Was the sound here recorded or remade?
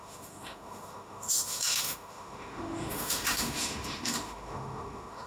remade